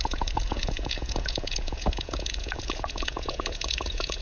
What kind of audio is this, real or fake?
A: fake